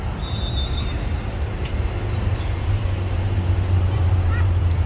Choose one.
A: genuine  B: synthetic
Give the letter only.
B